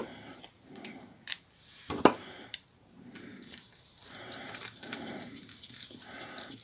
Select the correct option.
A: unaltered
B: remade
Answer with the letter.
B